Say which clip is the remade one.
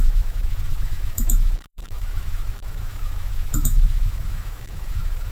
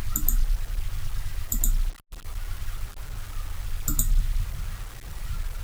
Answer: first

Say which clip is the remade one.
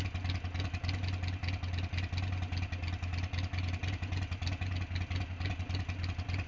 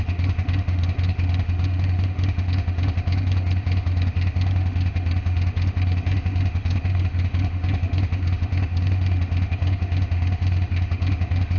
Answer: second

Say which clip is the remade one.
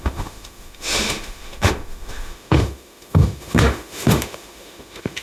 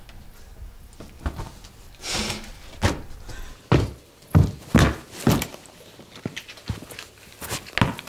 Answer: first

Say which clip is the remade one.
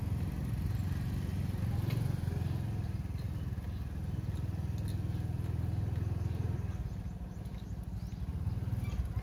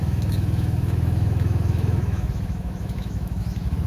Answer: second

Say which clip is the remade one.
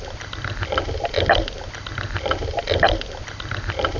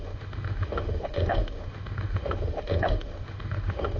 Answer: second